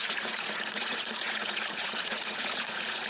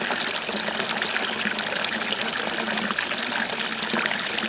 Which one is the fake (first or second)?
first